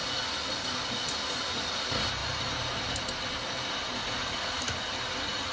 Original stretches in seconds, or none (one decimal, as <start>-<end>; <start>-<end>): 0.0-2.2; 3.0-5.5